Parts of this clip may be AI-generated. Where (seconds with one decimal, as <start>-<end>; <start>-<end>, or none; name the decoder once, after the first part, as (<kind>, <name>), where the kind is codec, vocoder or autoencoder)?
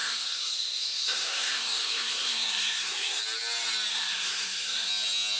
0.0-3.2 (codec, SNAC); 3.9-4.9